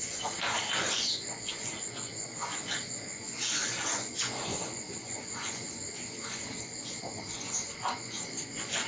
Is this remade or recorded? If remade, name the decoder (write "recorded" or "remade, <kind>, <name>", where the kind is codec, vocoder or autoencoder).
remade, vocoder, Vocos